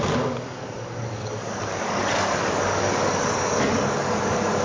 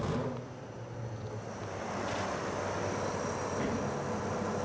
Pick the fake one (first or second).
first